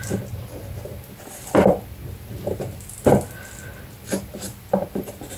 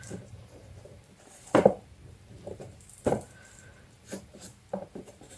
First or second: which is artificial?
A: second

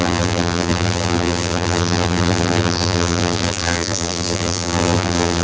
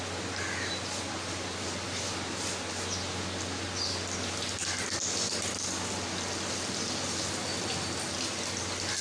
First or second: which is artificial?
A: first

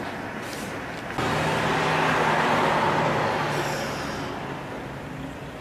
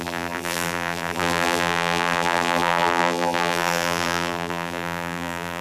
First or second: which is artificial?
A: second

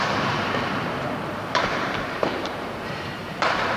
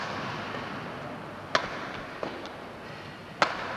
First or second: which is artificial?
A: first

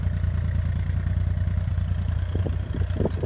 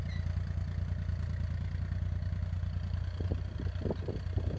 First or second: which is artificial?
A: first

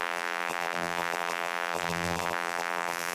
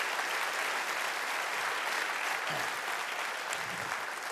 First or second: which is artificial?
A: first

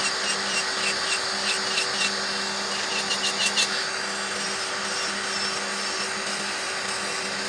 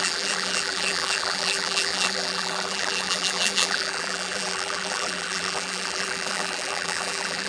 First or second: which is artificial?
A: second